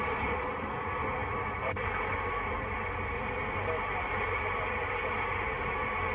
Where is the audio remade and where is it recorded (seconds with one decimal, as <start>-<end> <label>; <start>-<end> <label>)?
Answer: 0.0-1.2 recorded; 1.2-4.9 remade; 4.9-6.1 recorded

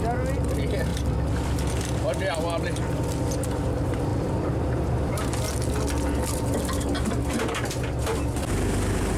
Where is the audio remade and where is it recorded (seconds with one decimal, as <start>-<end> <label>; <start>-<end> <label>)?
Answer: 0.0-0.9 recorded; 0.9-1.8 remade; 1.8-4.1 recorded; 4.1-5.2 remade; 5.2-8.1 recorded; 8.1-9.2 remade

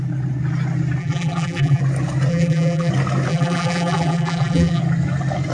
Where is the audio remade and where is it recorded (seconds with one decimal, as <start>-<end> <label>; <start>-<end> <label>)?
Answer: 0.0-1.0 recorded; 1.0-1.8 remade; 1.8-2.3 recorded; 2.3-2.9 remade; 2.9-3.3 recorded; 3.3-4.8 remade; 4.8-5.5 recorded

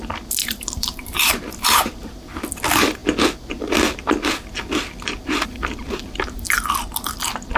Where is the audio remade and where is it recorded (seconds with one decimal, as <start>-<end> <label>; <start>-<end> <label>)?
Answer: 0.0-0.4 recorded; 0.4-2.4 remade; 2.4-7.6 recorded

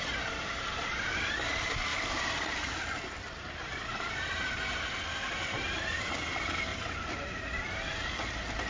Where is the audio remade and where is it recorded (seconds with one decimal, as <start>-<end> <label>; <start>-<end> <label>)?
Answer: 0.0-1.9 recorded; 1.9-4.2 remade; 4.2-6.7 recorded; 6.7-7.4 remade; 7.4-8.7 recorded

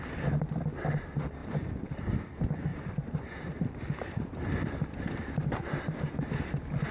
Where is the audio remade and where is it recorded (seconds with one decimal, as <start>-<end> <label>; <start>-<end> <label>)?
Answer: 0.0-2.7 recorded; 2.7-5.6 remade; 5.6-6.9 recorded

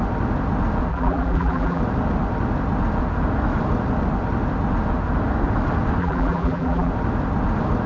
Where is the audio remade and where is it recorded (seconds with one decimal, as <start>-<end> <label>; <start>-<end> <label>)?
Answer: 0.0-0.9 recorded; 0.9-1.8 remade; 1.8-6.0 recorded; 6.0-6.9 remade; 6.9-7.9 recorded

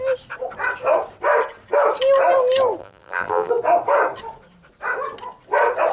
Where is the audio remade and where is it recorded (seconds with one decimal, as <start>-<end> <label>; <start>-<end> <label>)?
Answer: 0.0-2.8 recorded; 2.8-3.5 remade; 3.5-5.9 recorded